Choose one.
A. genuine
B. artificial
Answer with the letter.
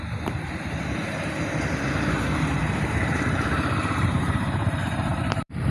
B